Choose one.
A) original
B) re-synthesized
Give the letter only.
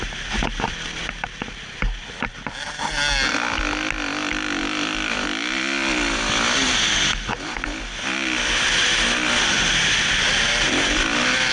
A